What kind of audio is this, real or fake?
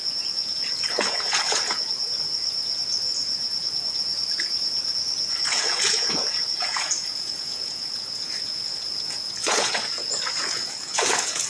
fake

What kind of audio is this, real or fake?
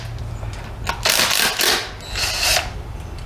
real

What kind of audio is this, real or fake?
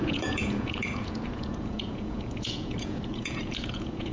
fake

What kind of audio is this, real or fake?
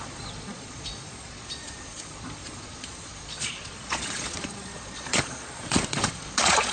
fake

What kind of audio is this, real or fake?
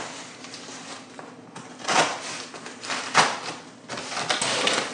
real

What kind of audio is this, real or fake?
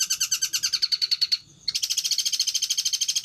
real